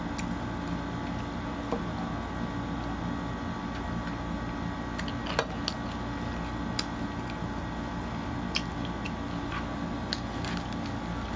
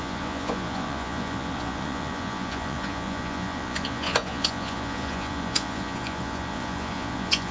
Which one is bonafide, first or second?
first